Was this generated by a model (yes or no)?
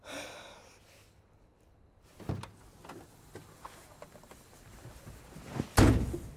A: no